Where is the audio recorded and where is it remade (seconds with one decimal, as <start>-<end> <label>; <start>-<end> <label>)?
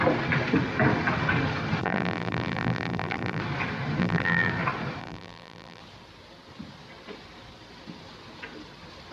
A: 0.0-1.8 recorded; 1.8-3.4 remade; 3.4-4.0 recorded; 4.0-4.5 remade; 4.5-5.0 recorded; 5.0-5.8 remade; 5.8-9.1 recorded